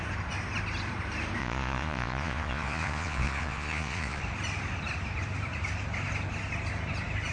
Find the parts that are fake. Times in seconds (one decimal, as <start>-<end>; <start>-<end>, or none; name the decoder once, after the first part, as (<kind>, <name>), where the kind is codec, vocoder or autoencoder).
1.4-4.2 (vocoder, Vocos)